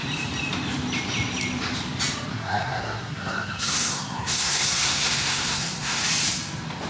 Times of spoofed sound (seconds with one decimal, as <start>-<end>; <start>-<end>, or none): 2.3-6.0